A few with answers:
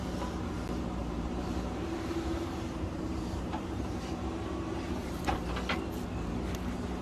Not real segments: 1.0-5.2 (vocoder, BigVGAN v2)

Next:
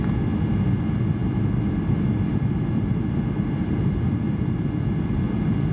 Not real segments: 1.2-4.6 (vocoder, BigVGAN v2)

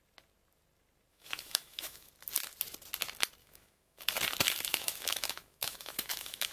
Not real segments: 1.1-2.1 (autoencoder, DAC-VAE); 3.4-4.1; 4.7-6.5

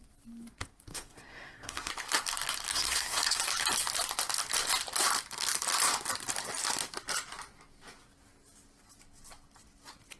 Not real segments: 0.9-1.9 (codec, SNAC); 2.7-3.4

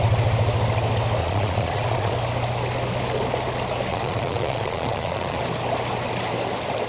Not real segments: 1.2-2.1 (vocoder, Vocos); 3.9-5.4

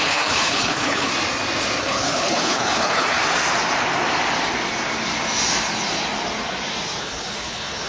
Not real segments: 0.0-1.1 (codec, HILCodec); 1.8-3.2; 7.0-7.9